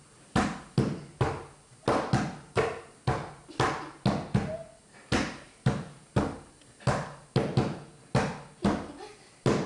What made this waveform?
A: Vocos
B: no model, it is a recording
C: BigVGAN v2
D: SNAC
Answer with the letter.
B